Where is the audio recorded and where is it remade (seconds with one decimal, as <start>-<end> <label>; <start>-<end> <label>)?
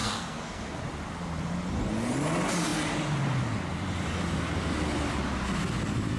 0.0-0.8 remade; 0.8-6.2 recorded